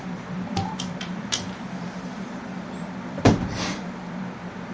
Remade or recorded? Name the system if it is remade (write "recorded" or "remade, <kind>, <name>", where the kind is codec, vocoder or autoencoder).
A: remade, vocoder, BigVGAN v2